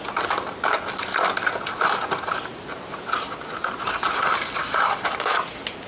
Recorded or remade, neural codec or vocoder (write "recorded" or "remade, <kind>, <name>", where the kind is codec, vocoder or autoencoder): recorded